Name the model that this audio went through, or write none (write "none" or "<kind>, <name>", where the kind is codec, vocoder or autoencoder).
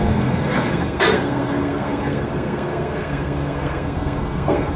codec, SNAC